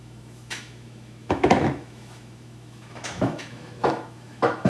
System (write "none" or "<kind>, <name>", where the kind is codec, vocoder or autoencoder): autoencoder, DAC-VAE